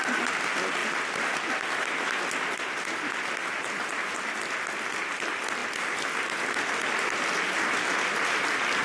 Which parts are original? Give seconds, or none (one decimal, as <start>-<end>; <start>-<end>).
0.0-8.8